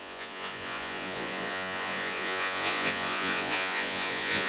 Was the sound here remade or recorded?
remade